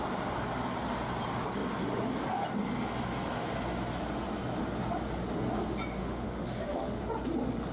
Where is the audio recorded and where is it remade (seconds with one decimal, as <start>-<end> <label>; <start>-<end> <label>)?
0.0-6.0 recorded; 6.0-7.0 remade; 7.0-7.7 recorded